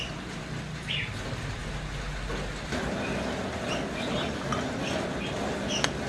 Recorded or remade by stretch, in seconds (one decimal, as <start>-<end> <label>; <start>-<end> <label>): 0.0-6.1 recorded

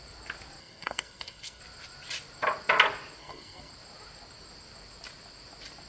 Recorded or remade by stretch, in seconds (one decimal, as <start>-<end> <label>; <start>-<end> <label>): 0.0-0.6 recorded; 0.6-1.6 remade; 1.6-3.2 recorded; 3.2-3.7 remade; 3.7-5.9 recorded

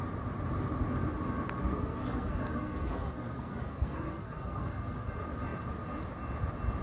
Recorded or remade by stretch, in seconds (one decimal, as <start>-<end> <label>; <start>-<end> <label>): 0.0-1.6 recorded; 1.6-5.1 remade; 5.1-6.8 recorded

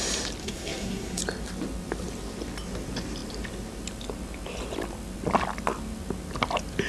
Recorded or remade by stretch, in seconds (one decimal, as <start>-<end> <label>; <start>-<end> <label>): 0.0-0.4 recorded; 0.4-1.2 remade; 1.2-6.9 recorded

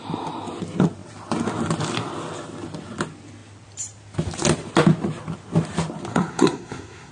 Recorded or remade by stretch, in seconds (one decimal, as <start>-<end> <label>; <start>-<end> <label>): 0.0-6.1 recorded; 6.1-7.1 remade

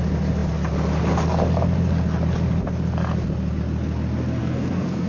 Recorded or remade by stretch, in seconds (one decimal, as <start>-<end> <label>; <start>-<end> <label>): 0.0-4.4 recorded; 4.4-5.1 remade

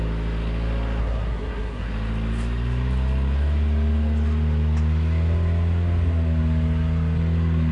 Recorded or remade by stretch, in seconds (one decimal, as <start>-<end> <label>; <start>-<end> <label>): 0.0-1.0 recorded; 1.0-1.9 remade; 1.9-7.7 recorded